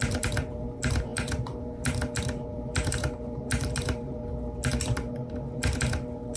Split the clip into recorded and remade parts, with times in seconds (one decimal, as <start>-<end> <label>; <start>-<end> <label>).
0.0-6.4 remade

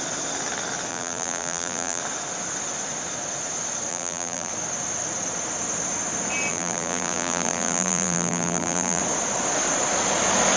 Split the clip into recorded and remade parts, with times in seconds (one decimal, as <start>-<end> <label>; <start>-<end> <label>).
0.0-0.9 recorded; 0.9-2.0 remade; 2.0-3.9 recorded; 3.9-4.5 remade; 4.5-6.5 recorded; 6.5-9.0 remade; 9.0-10.6 recorded

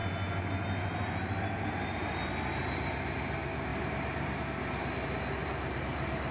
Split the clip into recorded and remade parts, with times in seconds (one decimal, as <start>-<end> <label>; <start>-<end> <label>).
0.0-3.7 recorded; 3.7-4.5 remade; 4.5-5.4 recorded; 5.4-6.3 remade

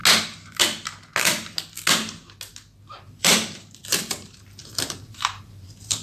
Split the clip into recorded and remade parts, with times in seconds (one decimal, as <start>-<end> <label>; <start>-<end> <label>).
0.0-3.0 recorded; 3.0-6.0 remade